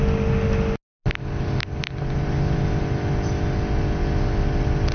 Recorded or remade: recorded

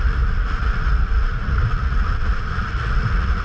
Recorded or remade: remade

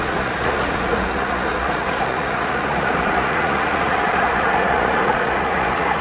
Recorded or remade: remade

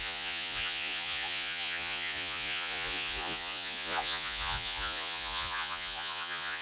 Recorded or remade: remade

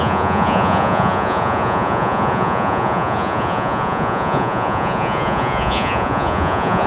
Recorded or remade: remade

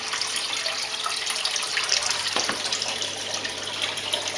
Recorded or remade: recorded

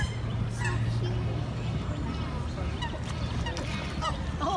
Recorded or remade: recorded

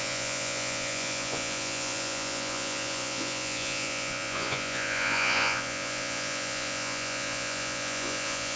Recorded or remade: remade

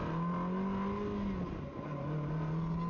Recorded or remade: recorded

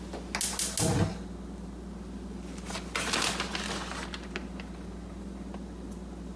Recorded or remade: recorded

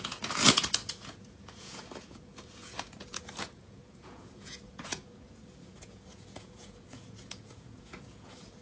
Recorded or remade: remade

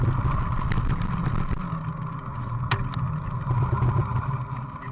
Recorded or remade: recorded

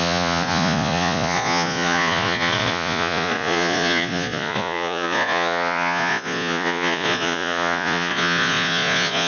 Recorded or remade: remade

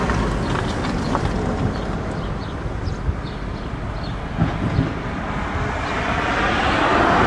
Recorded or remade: recorded